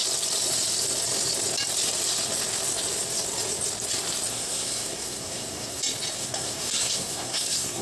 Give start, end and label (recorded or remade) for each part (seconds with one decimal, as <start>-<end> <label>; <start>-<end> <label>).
0.0-4.3 recorded; 4.3-5.8 remade; 5.8-6.2 recorded; 6.2-7.8 remade